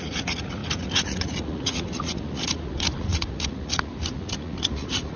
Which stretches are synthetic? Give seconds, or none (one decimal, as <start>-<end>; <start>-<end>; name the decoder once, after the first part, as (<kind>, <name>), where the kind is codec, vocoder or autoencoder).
0.0-5.2 (vocoder, Vocos)